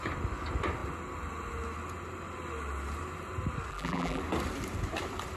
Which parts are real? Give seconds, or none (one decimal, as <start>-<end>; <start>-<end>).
0.0-3.7; 4.2-5.4